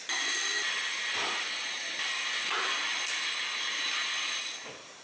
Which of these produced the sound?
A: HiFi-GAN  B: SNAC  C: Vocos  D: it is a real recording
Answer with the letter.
D